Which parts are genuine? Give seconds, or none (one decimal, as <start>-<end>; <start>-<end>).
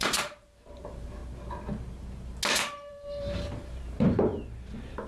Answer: 1.2-2.9; 4.3-5.1